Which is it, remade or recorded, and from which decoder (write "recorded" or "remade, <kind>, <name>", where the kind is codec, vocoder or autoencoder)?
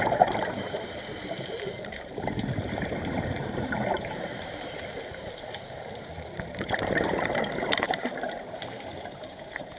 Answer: remade, vocoder, BigVGAN v2